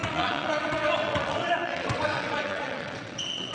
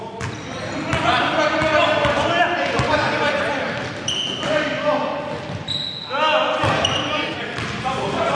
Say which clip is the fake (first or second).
first